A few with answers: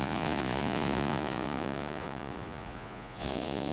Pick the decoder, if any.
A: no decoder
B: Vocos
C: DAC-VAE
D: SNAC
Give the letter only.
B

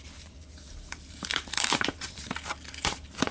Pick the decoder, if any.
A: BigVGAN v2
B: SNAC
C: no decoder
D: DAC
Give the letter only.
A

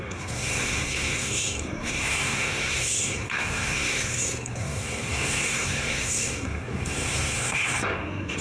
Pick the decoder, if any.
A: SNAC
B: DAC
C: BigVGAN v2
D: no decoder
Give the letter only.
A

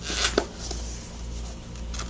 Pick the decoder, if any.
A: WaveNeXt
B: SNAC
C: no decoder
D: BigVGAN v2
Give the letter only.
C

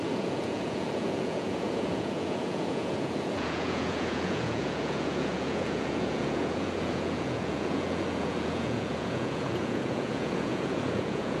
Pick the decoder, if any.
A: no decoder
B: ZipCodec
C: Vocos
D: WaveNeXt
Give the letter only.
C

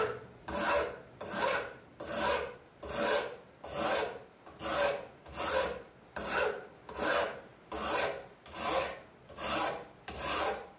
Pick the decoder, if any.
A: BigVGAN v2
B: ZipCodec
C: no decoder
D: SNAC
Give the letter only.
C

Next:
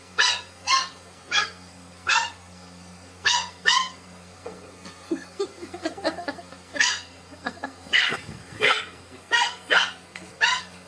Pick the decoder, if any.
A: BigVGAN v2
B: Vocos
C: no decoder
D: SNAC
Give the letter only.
D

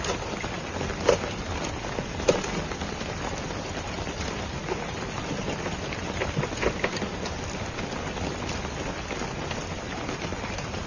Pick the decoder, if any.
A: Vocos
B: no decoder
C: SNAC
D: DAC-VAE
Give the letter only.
B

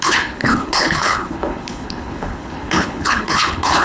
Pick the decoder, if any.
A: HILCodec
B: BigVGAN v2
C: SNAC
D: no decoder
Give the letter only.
A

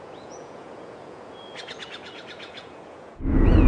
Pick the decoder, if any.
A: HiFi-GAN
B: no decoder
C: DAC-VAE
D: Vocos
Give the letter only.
D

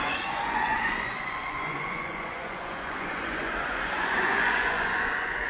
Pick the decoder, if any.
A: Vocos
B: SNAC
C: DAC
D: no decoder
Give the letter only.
A